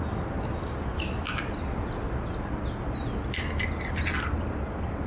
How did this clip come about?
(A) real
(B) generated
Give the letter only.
A